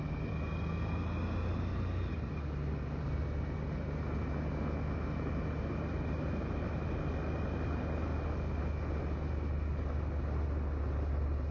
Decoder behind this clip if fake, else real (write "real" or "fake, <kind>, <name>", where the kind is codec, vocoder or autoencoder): real